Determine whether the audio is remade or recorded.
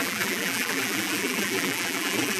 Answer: remade